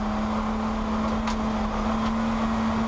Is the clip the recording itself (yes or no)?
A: yes